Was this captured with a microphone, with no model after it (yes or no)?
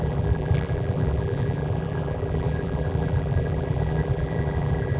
no